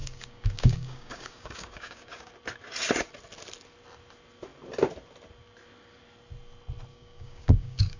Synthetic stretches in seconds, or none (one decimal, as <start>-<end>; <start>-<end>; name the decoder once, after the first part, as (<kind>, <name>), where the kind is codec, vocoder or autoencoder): 0.0-2.3 (codec, DAC); 6.9-8.0